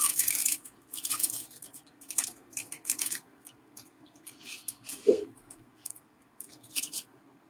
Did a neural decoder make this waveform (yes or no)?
yes